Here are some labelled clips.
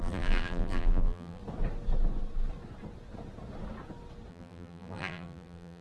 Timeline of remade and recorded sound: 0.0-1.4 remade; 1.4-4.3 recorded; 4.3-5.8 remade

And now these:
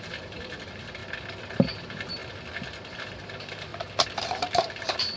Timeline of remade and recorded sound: 0.0-1.0 remade; 1.0-1.8 recorded; 1.8-2.2 remade; 2.2-2.9 recorded; 2.9-3.7 remade; 3.7-4.2 recorded; 4.2-5.2 remade

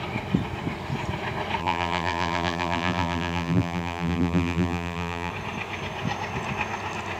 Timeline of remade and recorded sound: 0.0-1.6 recorded; 1.6-5.3 remade; 5.3-7.2 recorded

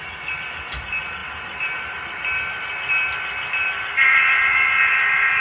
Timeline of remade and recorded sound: 0.0-1.2 recorded; 1.2-4.4 remade; 4.4-5.4 recorded

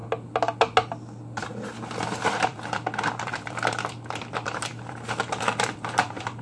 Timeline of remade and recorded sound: 0.0-2.5 recorded; 2.5-6.4 remade

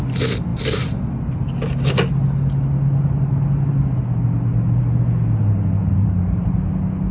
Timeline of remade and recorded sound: 0.0-5.8 recorded; 5.8-6.5 remade; 6.5-7.1 recorded